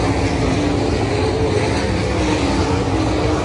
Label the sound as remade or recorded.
recorded